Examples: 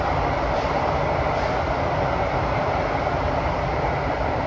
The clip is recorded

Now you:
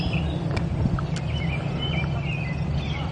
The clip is recorded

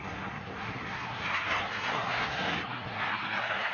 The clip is remade